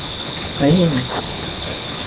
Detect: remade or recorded remade